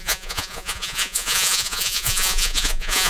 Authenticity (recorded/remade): remade